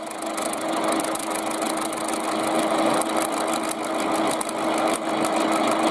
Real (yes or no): yes